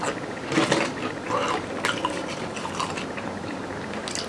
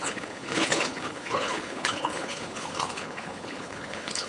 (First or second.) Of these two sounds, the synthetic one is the second